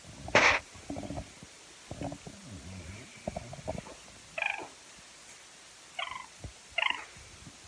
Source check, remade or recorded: recorded